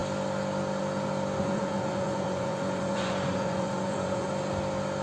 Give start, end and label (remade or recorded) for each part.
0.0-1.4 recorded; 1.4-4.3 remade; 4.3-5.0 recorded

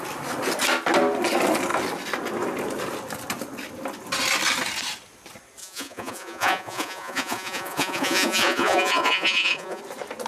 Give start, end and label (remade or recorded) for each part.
0.0-5.6 recorded; 5.6-9.8 remade; 9.8-10.3 recorded

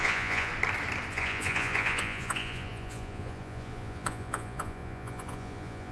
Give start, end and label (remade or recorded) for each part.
0.0-0.5 remade; 0.5-1.1 recorded; 1.1-5.9 remade

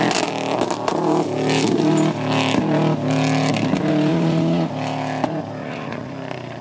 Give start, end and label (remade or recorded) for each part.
0.0-4.1 recorded; 4.1-4.7 remade; 4.7-5.6 recorded; 5.6-6.1 remade; 6.1-6.6 recorded

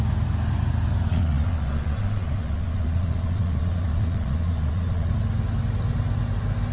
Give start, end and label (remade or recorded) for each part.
0.0-1.1 recorded; 1.1-5.1 remade; 5.1-6.7 recorded

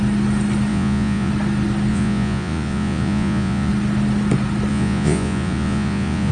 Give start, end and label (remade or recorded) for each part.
0.0-0.7 recorded; 0.7-1.3 remade; 1.3-1.9 recorded; 1.9-3.7 remade; 3.7-4.7 recorded; 4.7-6.3 remade

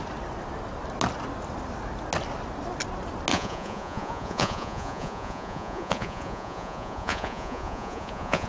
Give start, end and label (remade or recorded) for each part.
0.0-3.3 recorded; 3.3-8.5 remade